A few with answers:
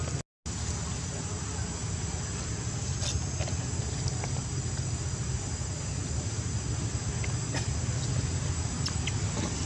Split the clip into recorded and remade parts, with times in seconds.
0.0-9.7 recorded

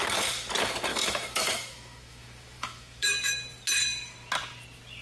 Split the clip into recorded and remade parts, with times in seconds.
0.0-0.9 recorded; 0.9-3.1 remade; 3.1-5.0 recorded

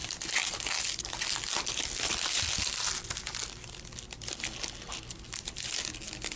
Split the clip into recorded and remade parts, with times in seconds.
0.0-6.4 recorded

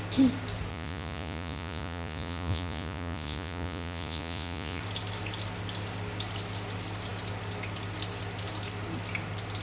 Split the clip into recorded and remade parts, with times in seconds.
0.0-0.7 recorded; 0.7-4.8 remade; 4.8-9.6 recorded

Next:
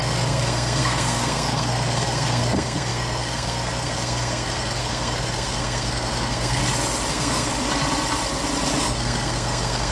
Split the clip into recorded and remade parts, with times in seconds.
0.0-6.6 remade; 6.6-7.1 recorded; 7.1-7.5 remade; 7.5-8.8 recorded; 8.8-9.9 remade

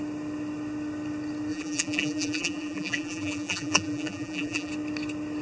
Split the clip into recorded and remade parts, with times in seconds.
0.0-1.5 recorded; 1.5-4.7 remade; 4.7-5.4 recorded

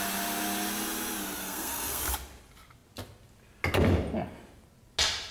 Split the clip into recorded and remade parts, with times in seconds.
0.0-1.4 recorded; 1.4-2.0 remade; 2.0-5.3 recorded

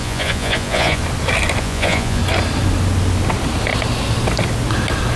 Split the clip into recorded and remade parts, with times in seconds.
0.0-1.0 remade; 1.0-1.6 recorded; 1.6-2.2 remade; 2.2-5.2 recorded